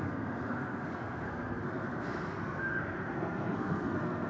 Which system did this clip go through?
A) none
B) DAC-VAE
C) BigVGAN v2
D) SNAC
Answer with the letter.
D